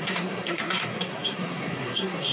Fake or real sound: fake